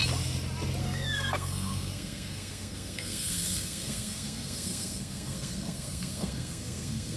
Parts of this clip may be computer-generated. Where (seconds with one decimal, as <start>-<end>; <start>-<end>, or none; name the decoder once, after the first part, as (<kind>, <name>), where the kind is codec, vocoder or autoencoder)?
0.8-7.2 (codec, SNAC)